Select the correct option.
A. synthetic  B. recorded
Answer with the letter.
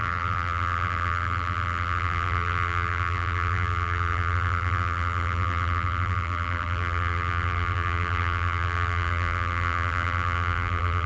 A